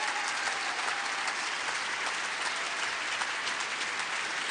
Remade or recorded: recorded